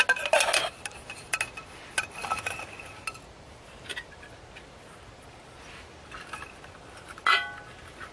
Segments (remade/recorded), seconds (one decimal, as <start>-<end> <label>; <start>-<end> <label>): 0.0-8.1 recorded